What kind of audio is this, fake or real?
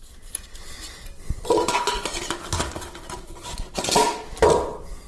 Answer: real